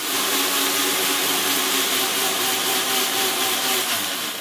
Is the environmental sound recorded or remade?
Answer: remade